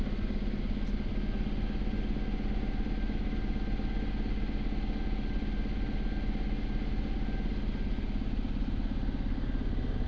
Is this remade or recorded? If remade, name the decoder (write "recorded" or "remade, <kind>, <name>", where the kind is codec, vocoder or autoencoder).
recorded